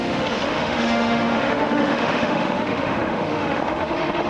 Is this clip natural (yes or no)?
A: no